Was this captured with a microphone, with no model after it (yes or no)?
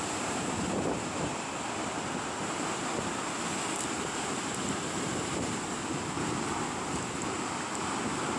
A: yes